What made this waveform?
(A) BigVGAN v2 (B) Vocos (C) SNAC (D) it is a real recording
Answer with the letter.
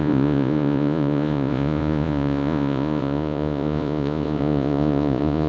B